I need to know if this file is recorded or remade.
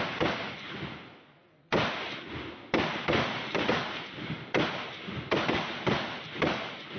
recorded